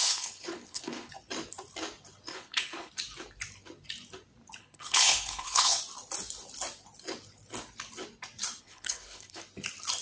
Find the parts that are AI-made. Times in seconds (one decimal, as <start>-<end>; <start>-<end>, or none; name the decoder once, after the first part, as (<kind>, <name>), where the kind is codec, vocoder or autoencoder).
0.0-1.1 (codec, HILCodec); 2.3-2.9; 4.6-5.8; 8.6-9.4